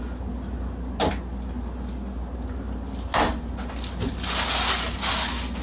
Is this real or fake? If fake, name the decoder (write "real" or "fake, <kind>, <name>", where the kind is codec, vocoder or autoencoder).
real